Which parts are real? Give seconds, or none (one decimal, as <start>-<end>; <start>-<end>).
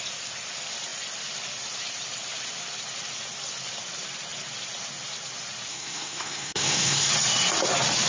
0.0-5.7; 7.1-8.1